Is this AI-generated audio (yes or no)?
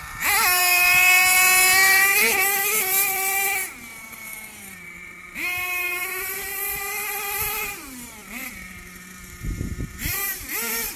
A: yes